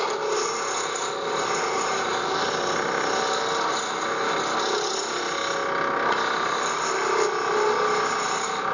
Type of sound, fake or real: real